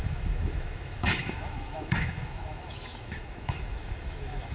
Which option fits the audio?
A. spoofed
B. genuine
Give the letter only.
A